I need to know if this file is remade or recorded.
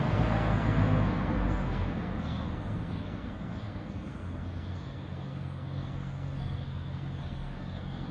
remade